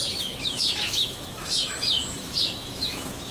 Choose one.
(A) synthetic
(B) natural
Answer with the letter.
A